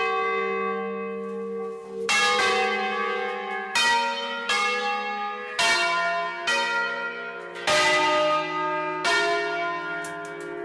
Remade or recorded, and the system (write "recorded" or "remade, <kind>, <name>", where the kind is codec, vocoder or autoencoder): recorded